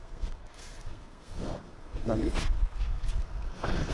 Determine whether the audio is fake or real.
fake